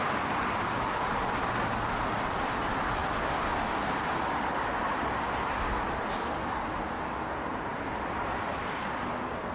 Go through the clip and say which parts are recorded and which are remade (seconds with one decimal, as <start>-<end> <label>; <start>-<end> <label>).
0.0-9.5 recorded